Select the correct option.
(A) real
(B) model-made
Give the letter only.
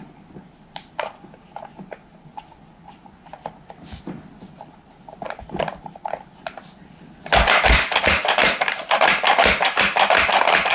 A